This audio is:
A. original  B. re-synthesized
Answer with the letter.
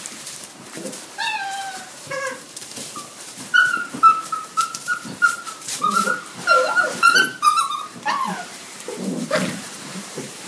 B